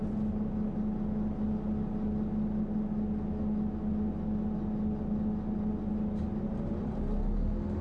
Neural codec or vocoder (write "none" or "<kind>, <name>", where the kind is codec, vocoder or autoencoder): none